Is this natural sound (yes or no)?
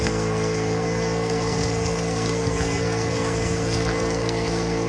no